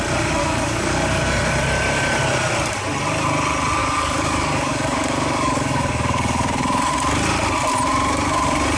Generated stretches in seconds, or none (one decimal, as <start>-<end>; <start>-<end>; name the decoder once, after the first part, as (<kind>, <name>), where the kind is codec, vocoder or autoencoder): 0.4-1.2 (codec, DAC); 3.8-6.9